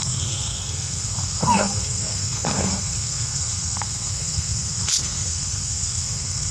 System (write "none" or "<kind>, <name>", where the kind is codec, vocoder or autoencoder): codec, SNAC